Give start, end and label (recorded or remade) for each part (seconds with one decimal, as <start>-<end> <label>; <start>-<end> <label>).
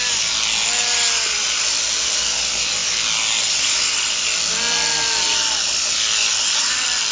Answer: 0.0-7.1 recorded